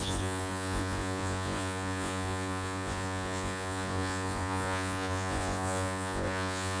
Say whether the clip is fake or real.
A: fake